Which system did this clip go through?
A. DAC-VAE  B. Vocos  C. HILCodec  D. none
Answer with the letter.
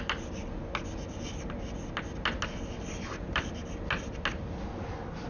D